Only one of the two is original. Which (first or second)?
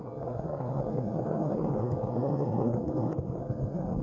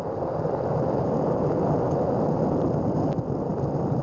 second